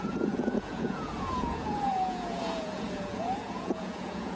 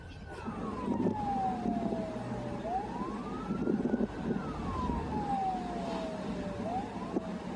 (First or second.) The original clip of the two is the second